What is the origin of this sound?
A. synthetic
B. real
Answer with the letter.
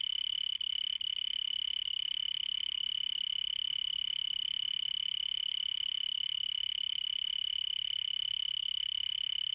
B